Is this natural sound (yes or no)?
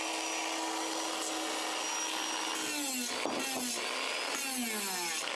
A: yes